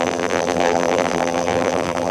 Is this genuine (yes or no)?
no